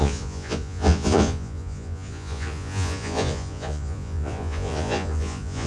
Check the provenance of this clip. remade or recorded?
remade